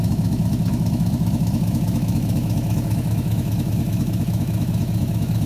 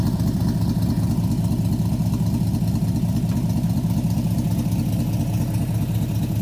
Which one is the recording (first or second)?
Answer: second